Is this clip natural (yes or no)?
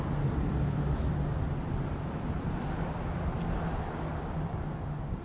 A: yes